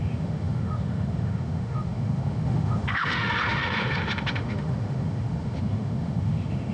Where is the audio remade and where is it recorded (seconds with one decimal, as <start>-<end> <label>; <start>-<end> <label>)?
0.0-6.7 remade